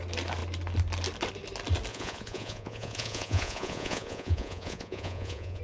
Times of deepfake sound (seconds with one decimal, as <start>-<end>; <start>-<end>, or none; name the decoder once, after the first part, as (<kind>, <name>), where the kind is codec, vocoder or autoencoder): 1.9-5.6 (vocoder, Vocos)